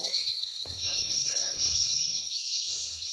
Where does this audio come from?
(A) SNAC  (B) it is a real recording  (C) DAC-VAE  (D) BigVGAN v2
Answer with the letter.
A